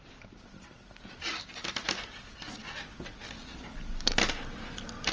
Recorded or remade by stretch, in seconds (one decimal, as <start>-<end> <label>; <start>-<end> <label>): 0.0-5.1 recorded